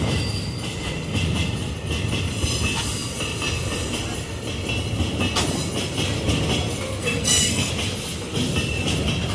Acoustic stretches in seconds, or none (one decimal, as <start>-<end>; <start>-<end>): 0.0-7.0; 7.7-9.3